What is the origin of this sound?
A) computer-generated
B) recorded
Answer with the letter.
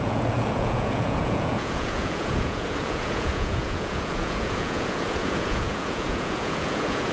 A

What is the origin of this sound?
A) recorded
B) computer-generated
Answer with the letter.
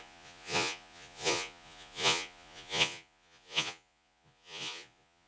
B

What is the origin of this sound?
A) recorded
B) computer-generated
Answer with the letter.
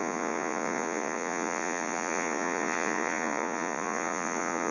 B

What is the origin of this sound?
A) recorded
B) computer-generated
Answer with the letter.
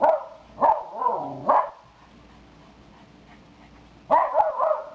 A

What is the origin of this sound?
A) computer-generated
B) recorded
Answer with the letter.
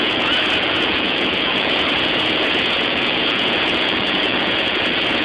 A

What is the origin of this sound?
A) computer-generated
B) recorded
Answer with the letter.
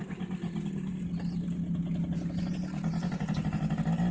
B